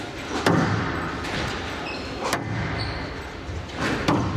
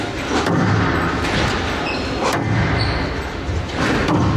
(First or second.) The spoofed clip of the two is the first